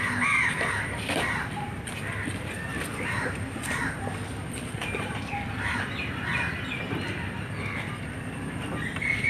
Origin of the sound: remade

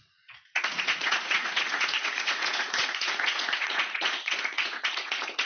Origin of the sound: remade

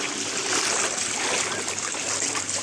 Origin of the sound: recorded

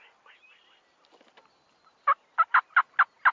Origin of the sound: recorded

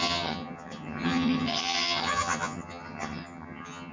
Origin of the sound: remade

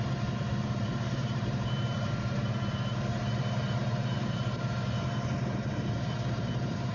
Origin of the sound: remade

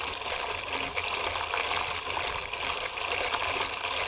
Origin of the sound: recorded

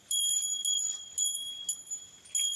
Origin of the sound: recorded